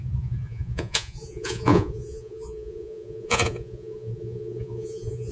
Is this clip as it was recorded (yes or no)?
no